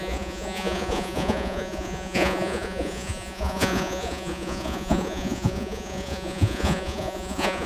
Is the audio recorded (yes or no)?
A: no